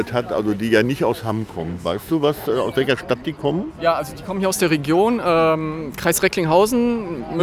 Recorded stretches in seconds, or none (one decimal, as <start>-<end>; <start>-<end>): 0.0-1.2; 2.5-7.4